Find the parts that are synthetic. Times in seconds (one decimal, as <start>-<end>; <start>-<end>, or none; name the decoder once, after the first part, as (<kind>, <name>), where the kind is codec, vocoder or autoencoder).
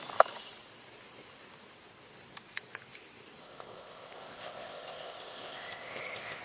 3.4-6.4 (codec, ZipCodec)